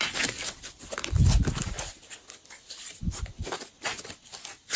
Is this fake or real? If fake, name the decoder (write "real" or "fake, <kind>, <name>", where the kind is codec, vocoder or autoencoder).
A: real